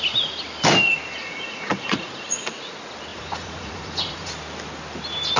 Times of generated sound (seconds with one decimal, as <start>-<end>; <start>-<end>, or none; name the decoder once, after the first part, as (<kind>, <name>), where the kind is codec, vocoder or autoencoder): 1.2-2.5 (vocoder, Vocos); 3.1-4.3